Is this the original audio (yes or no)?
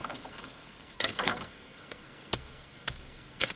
no